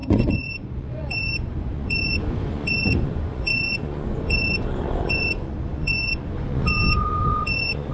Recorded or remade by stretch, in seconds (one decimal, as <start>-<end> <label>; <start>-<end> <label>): 0.0-7.9 remade